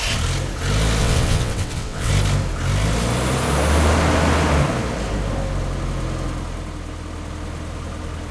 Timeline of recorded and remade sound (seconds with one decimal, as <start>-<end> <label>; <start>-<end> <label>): 0.0-1.0 recorded; 1.0-2.1 remade; 2.1-8.3 recorded